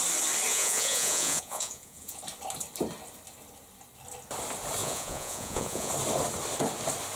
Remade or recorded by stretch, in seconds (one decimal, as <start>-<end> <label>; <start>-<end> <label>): 0.0-0.5 recorded; 0.5-2.2 remade; 2.2-4.8 recorded; 4.8-5.9 remade; 5.9-7.2 recorded